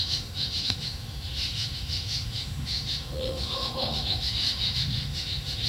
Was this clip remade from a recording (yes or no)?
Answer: yes